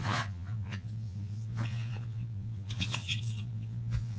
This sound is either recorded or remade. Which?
remade